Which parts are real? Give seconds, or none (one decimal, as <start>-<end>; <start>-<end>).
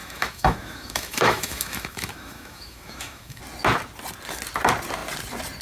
3.4-5.6